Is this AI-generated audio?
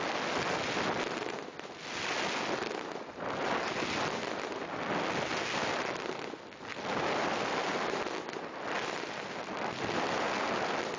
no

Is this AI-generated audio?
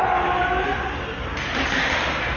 no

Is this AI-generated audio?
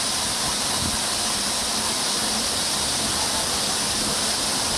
no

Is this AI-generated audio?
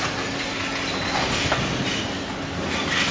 no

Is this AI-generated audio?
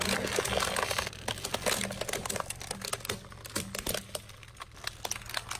no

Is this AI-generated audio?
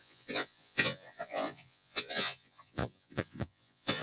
yes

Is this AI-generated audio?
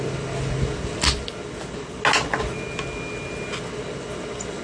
no